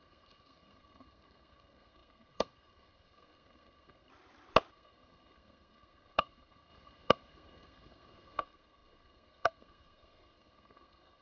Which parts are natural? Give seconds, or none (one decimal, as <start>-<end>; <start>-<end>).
4.1-4.7